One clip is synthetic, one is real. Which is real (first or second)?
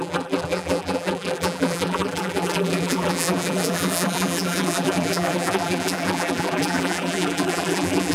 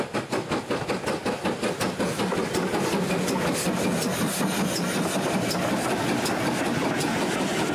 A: second